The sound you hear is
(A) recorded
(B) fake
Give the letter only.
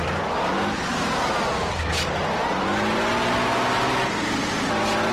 A